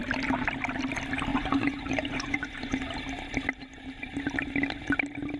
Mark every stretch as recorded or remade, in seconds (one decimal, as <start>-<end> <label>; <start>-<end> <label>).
0.0-1.3 recorded; 1.3-2.9 remade; 2.9-5.4 recorded